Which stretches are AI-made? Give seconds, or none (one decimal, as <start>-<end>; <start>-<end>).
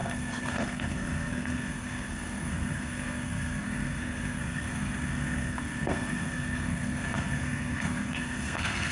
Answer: 0.0-8.9